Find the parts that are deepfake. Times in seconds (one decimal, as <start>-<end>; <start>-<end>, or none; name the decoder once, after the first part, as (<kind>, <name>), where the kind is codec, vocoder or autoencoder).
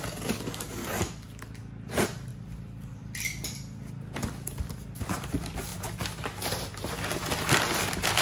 none